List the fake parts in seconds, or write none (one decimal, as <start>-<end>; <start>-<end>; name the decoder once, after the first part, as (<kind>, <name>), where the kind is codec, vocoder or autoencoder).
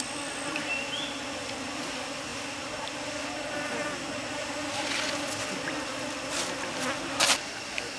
none